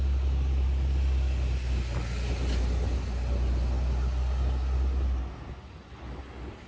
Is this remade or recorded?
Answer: recorded